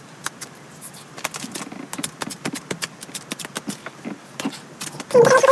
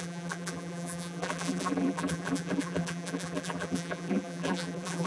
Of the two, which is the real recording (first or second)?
first